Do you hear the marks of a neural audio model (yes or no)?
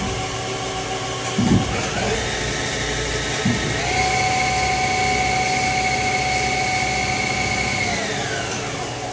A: no